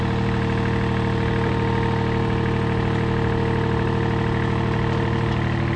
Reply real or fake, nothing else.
real